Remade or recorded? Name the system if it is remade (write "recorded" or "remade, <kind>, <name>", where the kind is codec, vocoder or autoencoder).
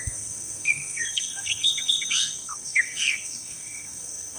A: remade, codec, SNAC